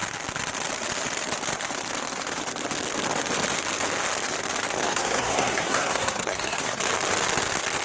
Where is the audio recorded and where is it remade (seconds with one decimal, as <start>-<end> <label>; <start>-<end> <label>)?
0.0-4.9 recorded; 4.9-6.8 remade; 6.8-7.8 recorded

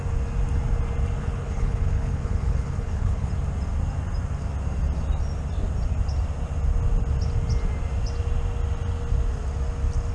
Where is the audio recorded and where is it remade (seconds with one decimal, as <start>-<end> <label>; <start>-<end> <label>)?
0.0-1.2 recorded; 1.2-3.3 remade; 3.3-10.1 recorded